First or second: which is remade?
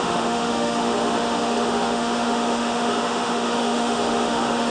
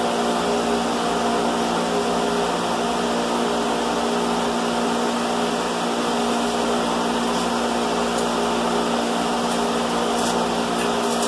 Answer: first